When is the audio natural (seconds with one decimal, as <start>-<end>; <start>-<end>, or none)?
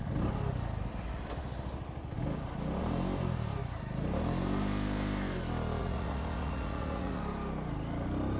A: 0.0-5.8; 7.2-8.4